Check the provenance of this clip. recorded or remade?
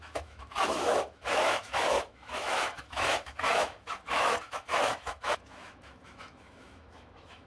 remade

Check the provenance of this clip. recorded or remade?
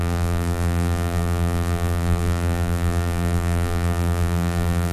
remade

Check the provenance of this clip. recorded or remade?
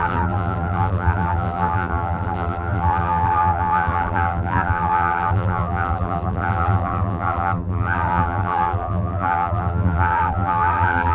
remade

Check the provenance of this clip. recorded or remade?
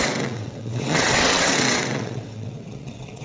remade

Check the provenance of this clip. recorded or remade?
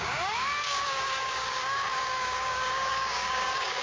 remade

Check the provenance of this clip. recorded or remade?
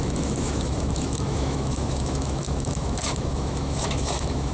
remade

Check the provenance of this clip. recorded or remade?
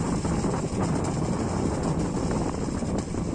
recorded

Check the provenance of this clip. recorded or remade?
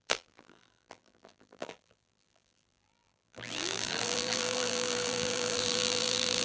remade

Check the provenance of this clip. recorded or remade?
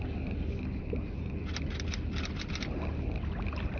recorded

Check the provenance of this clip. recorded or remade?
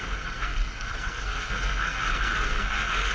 remade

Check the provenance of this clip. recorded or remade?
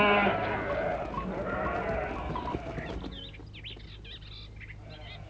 recorded